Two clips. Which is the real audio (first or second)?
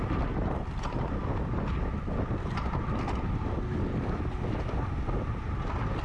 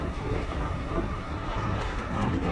first